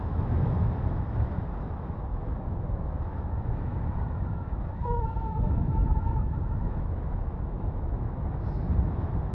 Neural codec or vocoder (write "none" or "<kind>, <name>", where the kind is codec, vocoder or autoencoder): autoencoder, DAC-VAE